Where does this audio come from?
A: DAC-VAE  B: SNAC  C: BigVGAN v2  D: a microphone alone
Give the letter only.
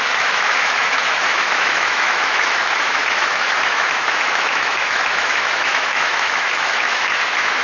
A